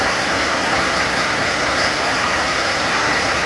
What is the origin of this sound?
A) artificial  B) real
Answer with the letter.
A